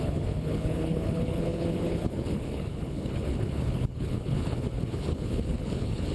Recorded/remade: remade